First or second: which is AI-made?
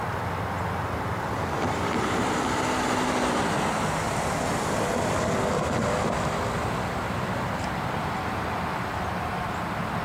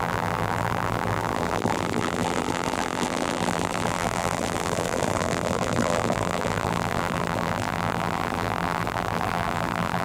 second